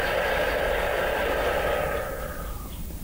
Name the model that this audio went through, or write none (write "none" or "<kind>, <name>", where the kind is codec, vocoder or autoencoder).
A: none